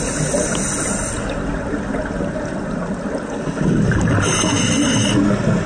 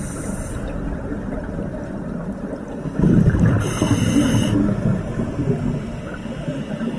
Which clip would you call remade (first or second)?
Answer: second